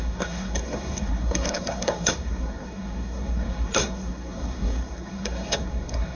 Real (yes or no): no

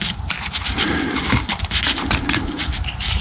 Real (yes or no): yes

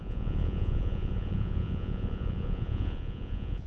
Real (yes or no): no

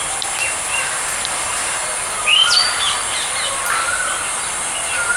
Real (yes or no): yes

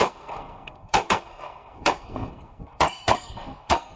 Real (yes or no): no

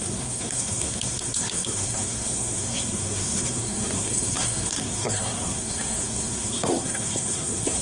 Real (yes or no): no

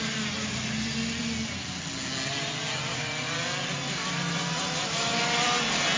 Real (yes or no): yes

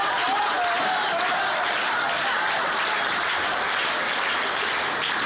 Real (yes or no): yes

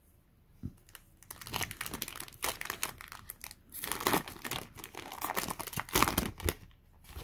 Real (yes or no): yes